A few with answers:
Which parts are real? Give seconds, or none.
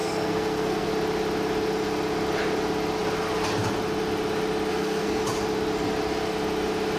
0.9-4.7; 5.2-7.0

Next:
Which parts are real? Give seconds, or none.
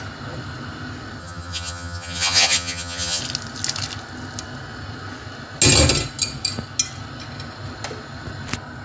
0.0-1.2; 3.2-8.8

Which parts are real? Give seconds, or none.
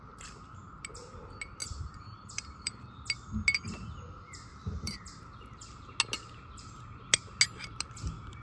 0.0-1.6; 2.9-4.5; 5.2-8.4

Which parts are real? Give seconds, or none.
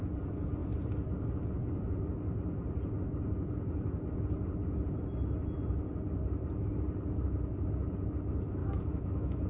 0.0-8.6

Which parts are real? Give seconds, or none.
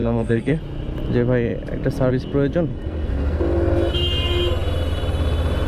0.6-2.7; 3.9-5.7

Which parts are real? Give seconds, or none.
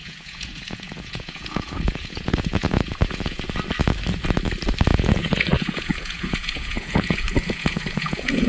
3.4-4.9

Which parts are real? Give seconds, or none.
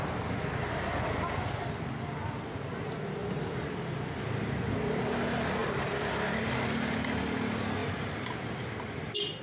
0.7-3.2; 4.7-5.6; 6.7-7.8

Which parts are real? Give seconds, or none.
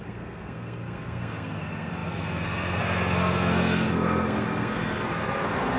none